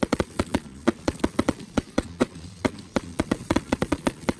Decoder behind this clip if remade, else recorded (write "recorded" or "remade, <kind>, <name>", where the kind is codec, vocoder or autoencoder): remade, vocoder, Vocos